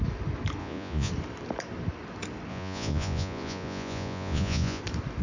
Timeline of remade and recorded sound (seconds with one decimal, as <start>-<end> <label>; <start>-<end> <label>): 0.0-0.6 recorded; 0.6-1.1 remade; 1.1-2.5 recorded; 2.5-4.8 remade; 4.8-5.2 recorded